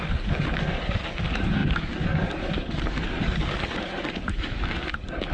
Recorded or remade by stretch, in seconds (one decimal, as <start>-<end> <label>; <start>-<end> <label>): 0.0-5.3 remade